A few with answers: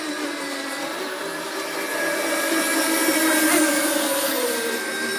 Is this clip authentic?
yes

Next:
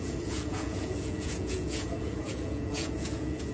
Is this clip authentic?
no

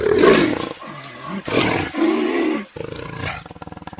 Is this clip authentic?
yes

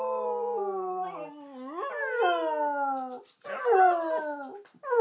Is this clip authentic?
yes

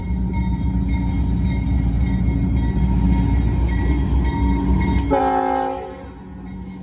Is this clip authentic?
yes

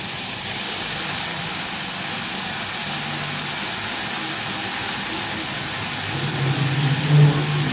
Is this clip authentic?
yes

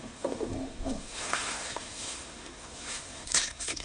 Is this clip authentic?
no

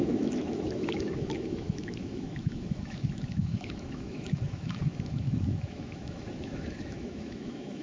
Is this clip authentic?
no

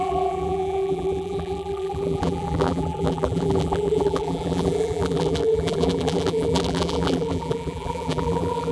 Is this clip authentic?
no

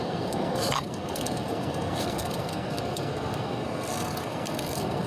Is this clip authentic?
no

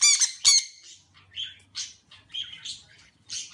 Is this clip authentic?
yes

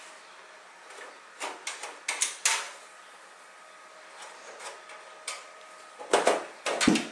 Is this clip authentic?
yes